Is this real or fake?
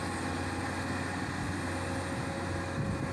real